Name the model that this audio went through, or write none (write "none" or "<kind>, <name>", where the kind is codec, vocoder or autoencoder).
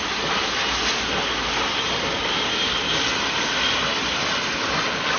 none